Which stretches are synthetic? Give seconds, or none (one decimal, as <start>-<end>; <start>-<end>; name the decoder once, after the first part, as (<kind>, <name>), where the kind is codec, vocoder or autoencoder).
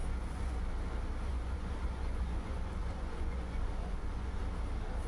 0.0-0.7 (vocoder, Vocos); 1.3-4.4